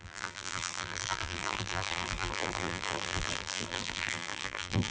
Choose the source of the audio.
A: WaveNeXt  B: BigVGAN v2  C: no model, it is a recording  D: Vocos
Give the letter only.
B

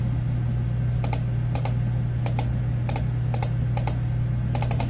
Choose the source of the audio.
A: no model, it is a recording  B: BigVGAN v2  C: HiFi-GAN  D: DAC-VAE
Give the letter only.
A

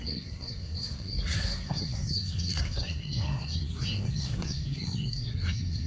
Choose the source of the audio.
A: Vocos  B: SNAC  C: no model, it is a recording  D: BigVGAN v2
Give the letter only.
B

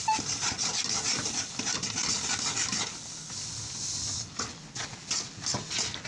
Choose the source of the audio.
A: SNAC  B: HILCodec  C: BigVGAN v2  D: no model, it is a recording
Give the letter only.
D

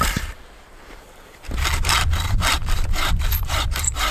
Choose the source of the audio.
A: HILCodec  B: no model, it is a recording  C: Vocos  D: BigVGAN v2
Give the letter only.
D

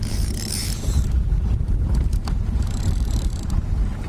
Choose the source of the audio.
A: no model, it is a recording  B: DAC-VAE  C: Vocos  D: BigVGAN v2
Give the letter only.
D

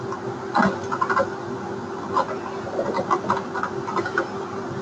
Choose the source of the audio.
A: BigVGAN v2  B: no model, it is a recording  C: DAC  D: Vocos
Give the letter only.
B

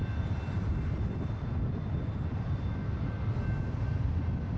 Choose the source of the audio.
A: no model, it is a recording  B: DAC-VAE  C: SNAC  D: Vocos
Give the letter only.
A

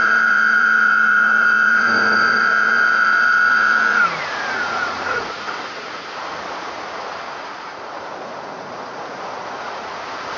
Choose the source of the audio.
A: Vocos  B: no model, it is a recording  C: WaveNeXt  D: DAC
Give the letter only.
A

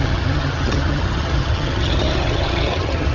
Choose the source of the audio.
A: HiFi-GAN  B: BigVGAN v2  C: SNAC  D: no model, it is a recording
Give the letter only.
A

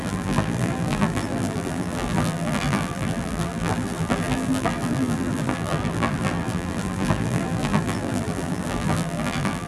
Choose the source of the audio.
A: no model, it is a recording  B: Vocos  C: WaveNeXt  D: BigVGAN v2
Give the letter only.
D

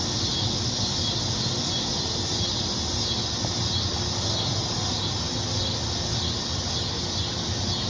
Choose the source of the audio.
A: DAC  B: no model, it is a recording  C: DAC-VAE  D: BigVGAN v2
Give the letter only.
B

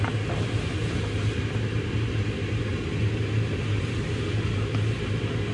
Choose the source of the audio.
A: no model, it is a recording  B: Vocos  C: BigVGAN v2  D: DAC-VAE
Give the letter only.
A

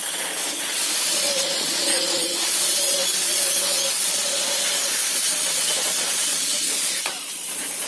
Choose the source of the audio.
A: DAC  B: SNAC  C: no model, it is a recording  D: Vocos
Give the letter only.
D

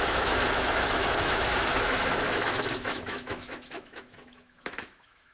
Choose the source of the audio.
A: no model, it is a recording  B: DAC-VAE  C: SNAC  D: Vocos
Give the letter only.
B